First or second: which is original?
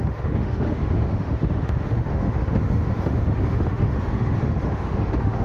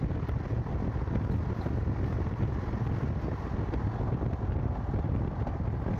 second